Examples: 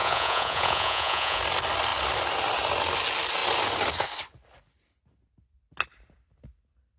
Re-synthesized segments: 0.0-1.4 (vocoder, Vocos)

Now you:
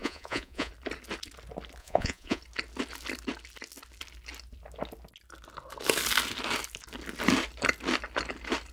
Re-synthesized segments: 0.0-0.7 (vocoder, Vocos); 1.8-2.4

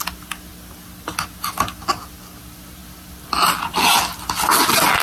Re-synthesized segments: none

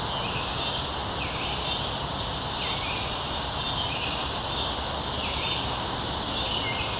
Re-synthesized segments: none